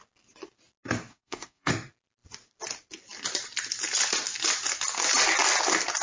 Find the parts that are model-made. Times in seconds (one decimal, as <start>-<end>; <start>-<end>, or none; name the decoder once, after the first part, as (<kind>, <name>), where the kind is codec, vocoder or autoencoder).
1.1-1.7 (codec, SNAC)